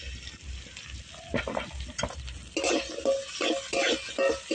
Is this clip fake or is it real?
real